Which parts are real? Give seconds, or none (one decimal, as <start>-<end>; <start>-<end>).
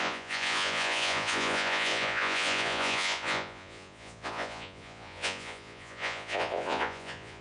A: none